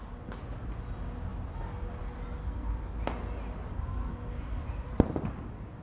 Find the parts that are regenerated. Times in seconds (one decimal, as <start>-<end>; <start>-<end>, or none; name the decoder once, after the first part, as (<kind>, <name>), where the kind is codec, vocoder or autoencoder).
2.4-3.0 (codec, SNAC); 3.7-4.9